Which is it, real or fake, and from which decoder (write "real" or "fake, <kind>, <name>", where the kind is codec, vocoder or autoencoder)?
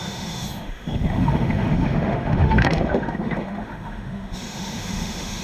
fake, autoencoder, DAC-VAE